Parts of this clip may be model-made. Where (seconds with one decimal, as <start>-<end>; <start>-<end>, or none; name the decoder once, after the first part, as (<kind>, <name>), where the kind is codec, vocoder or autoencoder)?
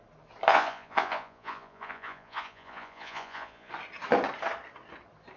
0.5-3.7 (vocoder, Vocos)